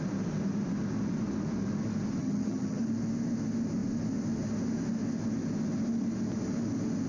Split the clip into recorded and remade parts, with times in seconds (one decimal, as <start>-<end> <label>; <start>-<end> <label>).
0.0-2.2 recorded; 2.2-2.8 remade; 2.8-7.1 recorded